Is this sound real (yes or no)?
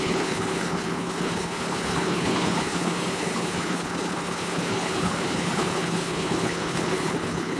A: no